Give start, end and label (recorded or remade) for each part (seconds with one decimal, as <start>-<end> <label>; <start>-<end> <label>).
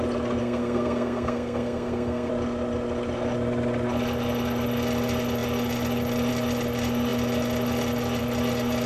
0.0-0.4 recorded; 0.4-2.3 remade; 2.3-8.9 recorded